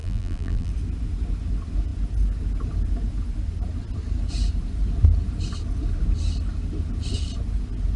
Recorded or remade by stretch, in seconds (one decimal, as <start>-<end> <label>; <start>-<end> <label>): 0.0-0.7 remade; 0.7-8.0 recorded